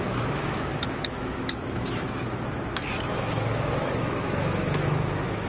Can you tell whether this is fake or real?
fake